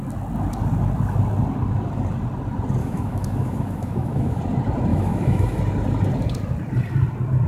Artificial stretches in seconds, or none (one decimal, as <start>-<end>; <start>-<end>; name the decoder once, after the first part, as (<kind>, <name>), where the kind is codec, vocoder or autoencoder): 2.8-4.4 (autoencoder, DAC-VAE); 4.9-5.6